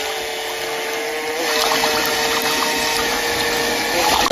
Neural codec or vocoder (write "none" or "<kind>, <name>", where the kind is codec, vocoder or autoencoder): none